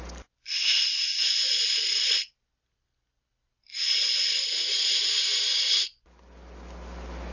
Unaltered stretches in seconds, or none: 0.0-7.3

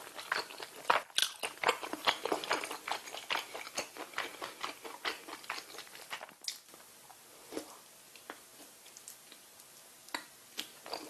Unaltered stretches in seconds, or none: 0.0-11.1

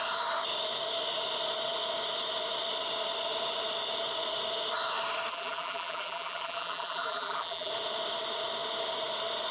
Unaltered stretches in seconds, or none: 0.0-5.3; 7.7-9.5

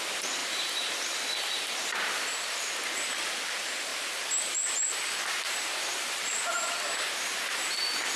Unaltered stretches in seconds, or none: 0.0-0.4; 2.6-3.9; 7.7-8.2

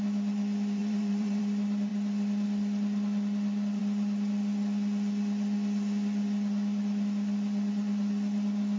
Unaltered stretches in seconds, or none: 0.0-0.8; 1.4-8.8

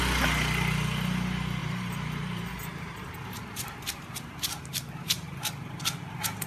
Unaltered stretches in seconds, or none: 0.0-1.6; 5.5-6.5

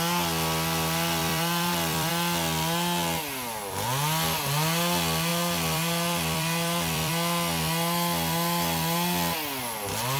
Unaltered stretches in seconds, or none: 0.0-1.2; 2.1-5.3; 7.1-10.2

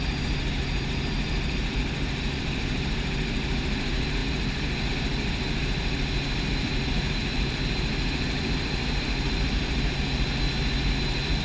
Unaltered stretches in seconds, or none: 4.2-4.9